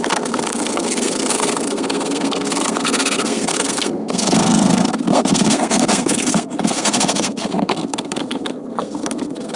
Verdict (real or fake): fake